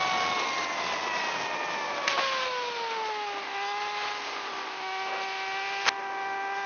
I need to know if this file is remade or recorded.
recorded